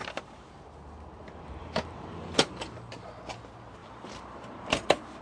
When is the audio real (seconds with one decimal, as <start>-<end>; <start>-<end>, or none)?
3.1-3.8